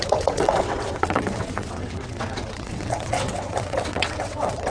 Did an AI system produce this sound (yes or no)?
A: yes